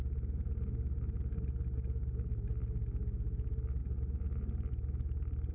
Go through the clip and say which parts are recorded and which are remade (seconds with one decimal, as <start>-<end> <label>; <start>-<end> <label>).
0.0-5.5 recorded